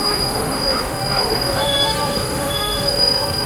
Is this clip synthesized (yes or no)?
yes